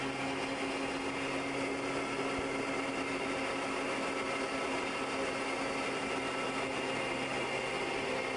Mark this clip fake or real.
real